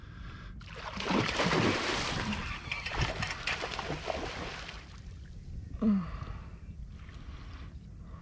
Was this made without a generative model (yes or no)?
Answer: yes